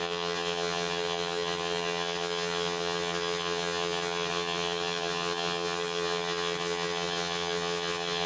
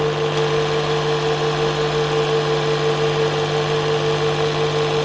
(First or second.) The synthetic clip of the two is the first